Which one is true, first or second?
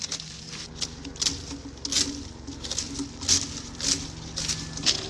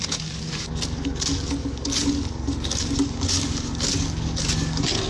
first